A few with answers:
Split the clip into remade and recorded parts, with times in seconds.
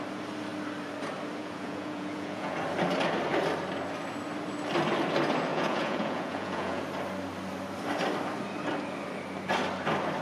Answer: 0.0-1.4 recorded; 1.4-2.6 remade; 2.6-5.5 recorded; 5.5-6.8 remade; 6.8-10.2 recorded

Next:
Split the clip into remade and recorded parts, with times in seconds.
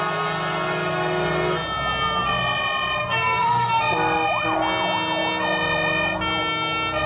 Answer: 0.0-3.0 recorded; 3.0-3.7 remade; 3.7-7.1 recorded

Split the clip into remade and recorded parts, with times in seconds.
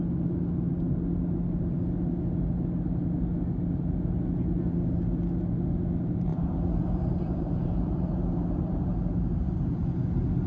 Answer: 0.0-6.3 recorded; 6.3-9.8 remade; 9.8-10.5 recorded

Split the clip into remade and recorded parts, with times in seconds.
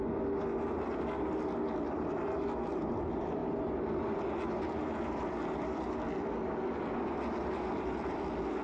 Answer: 0.0-8.6 recorded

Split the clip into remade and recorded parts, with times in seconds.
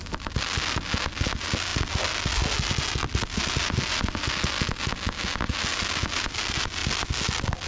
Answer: 0.0-7.7 recorded